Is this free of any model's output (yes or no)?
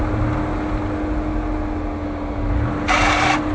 yes